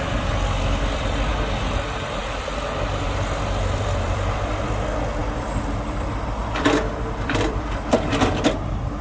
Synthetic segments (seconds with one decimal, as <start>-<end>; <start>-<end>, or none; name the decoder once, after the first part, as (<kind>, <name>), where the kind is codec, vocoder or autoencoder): 0.0-1.3 (vocoder, BigVGAN v2); 2.2-9.0